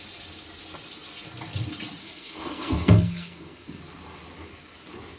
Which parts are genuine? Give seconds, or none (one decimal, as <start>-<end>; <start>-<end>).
0.0-2.0; 3.8-5.2